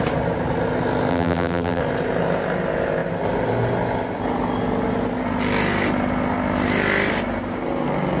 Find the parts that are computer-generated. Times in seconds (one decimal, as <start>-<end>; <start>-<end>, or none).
1.1-1.8